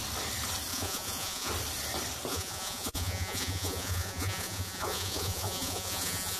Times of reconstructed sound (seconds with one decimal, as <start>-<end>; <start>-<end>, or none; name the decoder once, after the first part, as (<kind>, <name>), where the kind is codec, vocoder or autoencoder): 0.7-1.5 (vocoder, Vocos); 2.3-6.4